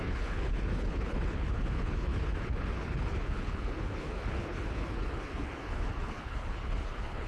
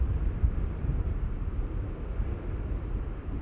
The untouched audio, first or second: second